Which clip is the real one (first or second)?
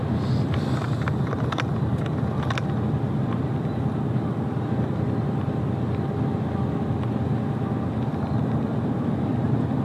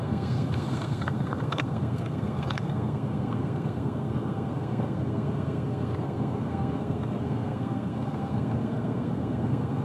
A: first